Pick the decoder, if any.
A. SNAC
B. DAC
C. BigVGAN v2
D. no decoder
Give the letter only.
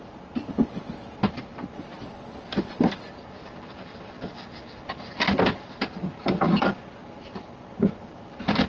C